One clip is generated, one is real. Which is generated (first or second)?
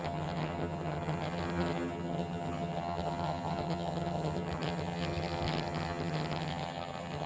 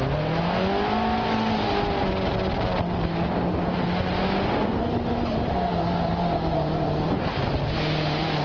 first